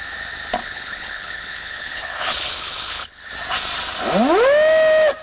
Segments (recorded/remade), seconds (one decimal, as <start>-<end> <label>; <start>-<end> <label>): 0.0-0.6 recorded; 0.6-3.3 remade; 3.3-5.2 recorded